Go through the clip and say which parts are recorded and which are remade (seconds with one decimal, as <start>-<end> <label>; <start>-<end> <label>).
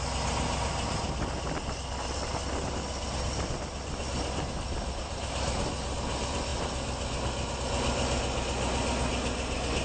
0.0-9.8 recorded